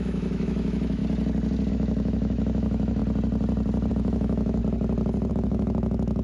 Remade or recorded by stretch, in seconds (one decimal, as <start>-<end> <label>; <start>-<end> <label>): 0.0-1.0 remade; 1.0-1.7 recorded; 1.7-3.0 remade; 3.0-3.9 recorded; 3.9-4.6 remade; 4.6-5.3 recorded; 5.3-6.2 remade